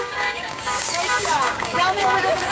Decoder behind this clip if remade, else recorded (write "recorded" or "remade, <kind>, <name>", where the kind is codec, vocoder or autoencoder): remade, codec, DAC